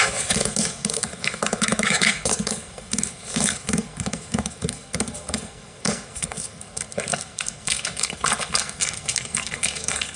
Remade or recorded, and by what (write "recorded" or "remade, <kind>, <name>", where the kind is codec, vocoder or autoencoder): remade, codec, SNAC